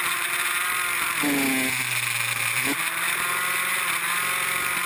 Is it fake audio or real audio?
real